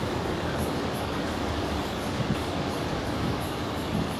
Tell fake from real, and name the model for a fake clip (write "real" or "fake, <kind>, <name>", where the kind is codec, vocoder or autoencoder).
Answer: fake, codec, DAC